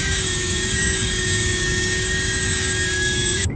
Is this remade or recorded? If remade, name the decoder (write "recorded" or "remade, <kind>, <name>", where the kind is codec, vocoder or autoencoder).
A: remade, codec, DAC